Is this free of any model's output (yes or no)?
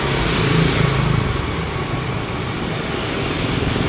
yes